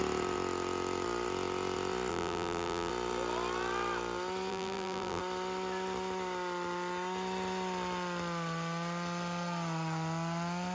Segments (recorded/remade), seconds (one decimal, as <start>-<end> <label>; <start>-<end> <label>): 0.0-2.1 recorded; 2.1-2.9 remade; 2.9-4.5 recorded; 4.5-5.2 remade; 5.2-10.7 recorded